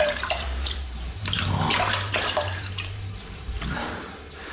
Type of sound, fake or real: fake